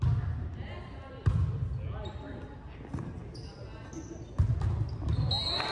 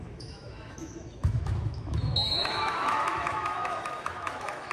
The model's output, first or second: second